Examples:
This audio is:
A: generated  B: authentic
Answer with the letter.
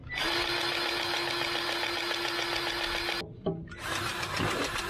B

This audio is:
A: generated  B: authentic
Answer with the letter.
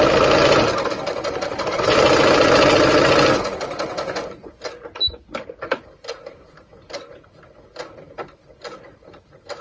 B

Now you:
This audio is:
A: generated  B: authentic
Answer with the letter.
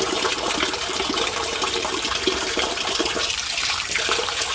A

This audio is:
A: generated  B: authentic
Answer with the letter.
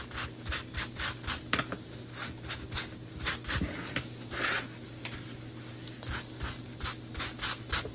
B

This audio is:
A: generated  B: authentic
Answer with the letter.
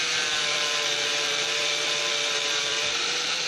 A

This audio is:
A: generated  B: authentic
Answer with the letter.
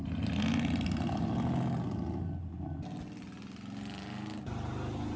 B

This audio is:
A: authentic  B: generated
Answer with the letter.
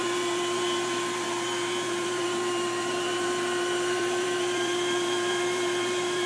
B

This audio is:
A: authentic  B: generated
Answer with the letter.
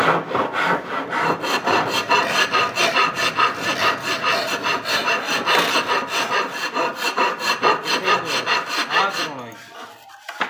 A